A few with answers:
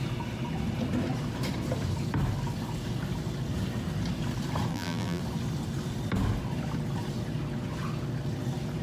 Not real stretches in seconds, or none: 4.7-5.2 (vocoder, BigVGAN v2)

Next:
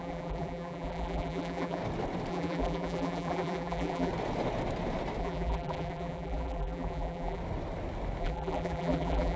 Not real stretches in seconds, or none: 0.0-1.8 (vocoder, BigVGAN v2); 2.3-4.1; 5.2-7.4; 8.2-9.4